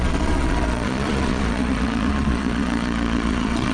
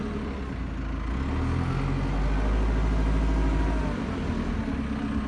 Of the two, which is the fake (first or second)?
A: first